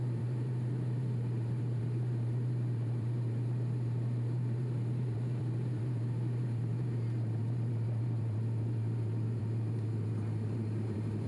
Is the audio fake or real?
fake